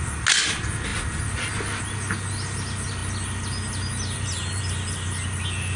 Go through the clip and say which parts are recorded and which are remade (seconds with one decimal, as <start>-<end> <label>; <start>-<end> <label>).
0.0-5.8 recorded

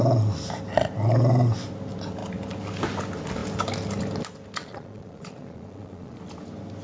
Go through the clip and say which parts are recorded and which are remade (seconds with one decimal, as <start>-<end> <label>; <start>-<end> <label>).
0.0-4.6 recorded; 4.6-6.2 remade; 6.2-6.8 recorded

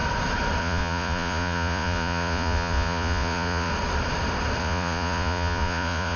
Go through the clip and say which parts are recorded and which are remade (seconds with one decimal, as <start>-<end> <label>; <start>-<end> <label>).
0.0-0.6 recorded; 0.6-3.7 remade; 3.7-4.6 recorded; 4.6-6.2 remade

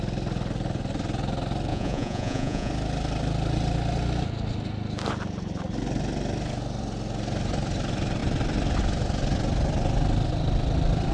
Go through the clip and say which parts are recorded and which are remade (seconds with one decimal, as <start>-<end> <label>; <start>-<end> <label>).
0.0-1.7 recorded; 1.7-2.7 remade; 2.7-11.1 recorded

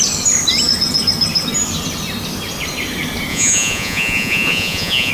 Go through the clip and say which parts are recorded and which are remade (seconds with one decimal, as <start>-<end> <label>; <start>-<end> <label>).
0.0-3.3 recorded; 3.3-5.1 remade

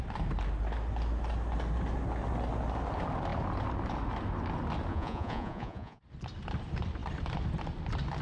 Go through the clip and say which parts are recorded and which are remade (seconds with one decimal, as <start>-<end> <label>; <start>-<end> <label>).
0.0-4.9 recorded; 4.9-6.0 remade; 6.0-8.2 recorded

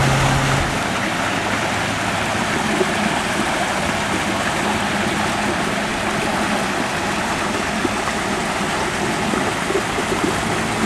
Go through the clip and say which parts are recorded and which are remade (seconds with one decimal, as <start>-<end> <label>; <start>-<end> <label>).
0.0-10.9 recorded